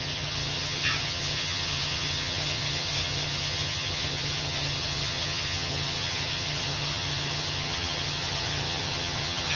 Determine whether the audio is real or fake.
fake